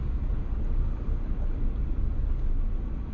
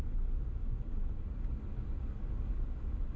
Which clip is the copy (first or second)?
first